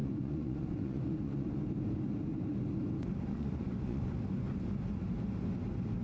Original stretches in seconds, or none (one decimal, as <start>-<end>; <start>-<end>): 1.6-3.3; 4.2-6.0